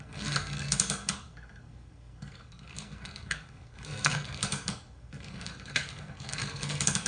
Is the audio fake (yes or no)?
yes